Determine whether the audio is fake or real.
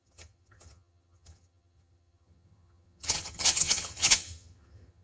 fake